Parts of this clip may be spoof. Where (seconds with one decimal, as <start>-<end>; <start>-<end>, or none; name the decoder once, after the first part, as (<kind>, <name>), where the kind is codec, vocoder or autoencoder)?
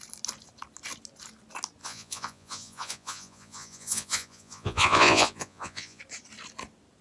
1.8-6.0 (vocoder, Vocos)